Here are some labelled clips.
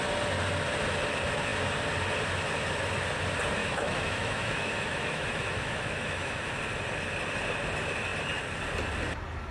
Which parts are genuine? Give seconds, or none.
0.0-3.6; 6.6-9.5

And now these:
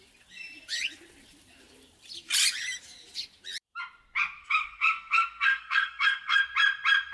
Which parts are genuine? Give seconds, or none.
0.0-4.4; 6.4-7.1

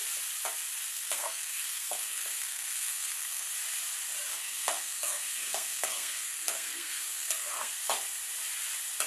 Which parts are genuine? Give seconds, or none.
0.0-0.9; 3.5-4.3; 7.7-9.1

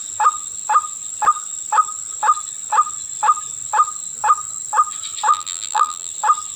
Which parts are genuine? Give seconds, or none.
0.0-5.3; 6.1-6.6